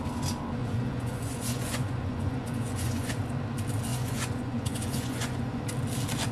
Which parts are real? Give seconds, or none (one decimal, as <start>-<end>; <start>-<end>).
0.0-0.6; 3.1-3.9; 5.6-6.3